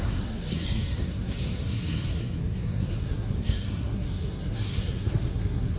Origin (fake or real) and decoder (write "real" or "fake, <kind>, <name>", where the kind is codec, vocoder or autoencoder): fake, codec, SNAC